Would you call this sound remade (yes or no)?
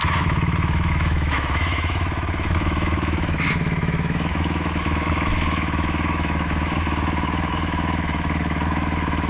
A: yes